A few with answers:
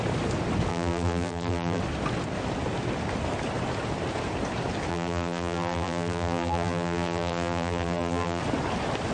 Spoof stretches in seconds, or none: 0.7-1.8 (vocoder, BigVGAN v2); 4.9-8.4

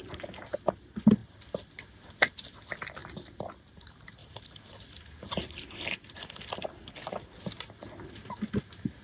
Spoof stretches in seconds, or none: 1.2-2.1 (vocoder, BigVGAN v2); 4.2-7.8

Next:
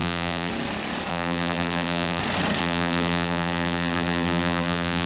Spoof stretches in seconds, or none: 0.0-0.5 (vocoder, BigVGAN v2); 1.1-2.2; 2.6-5.1

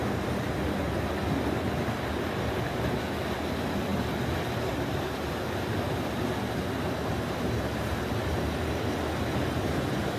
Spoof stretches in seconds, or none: none